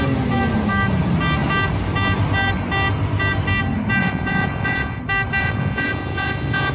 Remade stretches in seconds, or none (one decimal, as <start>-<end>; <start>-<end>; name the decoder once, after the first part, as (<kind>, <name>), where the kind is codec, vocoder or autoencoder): 4.0-5.0 (vocoder, Vocos); 5.4-6.7